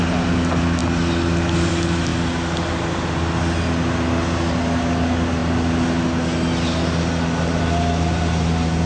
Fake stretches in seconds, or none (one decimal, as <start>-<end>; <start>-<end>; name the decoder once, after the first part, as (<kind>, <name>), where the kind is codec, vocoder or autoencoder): none